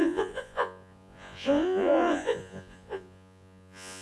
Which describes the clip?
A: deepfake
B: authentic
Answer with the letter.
A